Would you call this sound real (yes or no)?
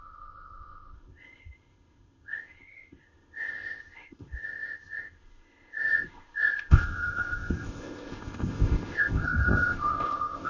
no